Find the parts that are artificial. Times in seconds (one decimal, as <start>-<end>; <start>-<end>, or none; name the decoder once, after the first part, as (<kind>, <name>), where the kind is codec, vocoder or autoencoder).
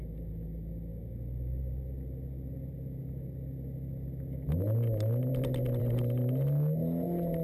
none